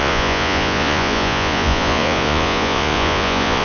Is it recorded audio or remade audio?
remade